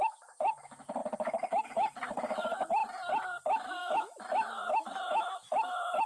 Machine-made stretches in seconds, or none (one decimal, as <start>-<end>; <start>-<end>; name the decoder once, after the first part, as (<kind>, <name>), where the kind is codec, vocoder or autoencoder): 0.0-2.8 (autoencoder, DAC-VAE); 3.4-6.1